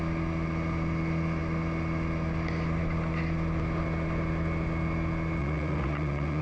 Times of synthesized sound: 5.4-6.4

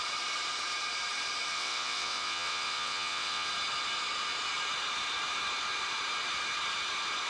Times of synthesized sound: 1.5-3.5

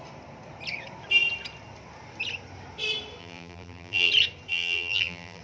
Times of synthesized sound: 3.2-4.1; 4.5-5.4

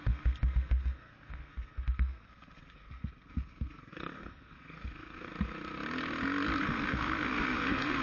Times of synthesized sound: 0.0-5.3; 6.6-8.0

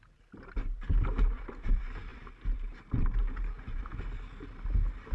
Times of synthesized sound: none

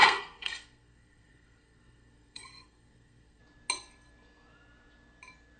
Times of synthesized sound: 0.0-3.4

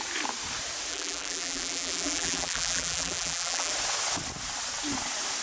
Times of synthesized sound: 0.9-3.7